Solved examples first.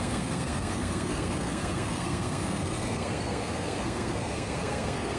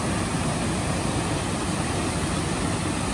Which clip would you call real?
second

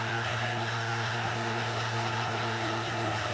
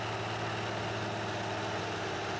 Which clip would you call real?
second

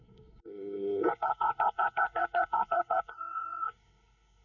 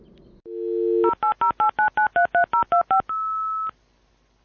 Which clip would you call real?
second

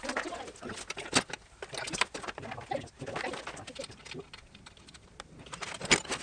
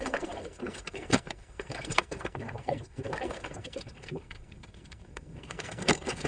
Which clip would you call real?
first